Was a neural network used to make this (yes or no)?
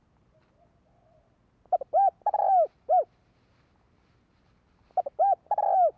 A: no